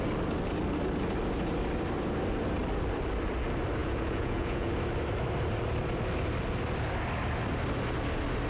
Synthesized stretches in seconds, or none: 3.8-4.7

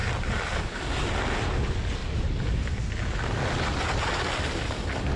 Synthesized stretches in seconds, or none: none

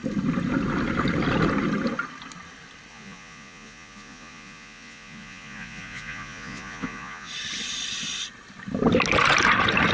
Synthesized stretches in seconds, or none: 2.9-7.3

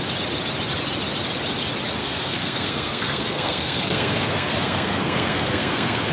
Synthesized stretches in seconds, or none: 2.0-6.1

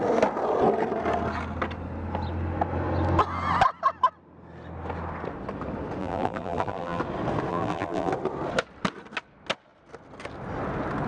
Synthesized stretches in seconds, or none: 6.0-7.0; 7.5-8.1

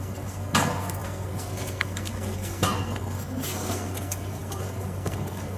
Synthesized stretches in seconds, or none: 0.0-5.6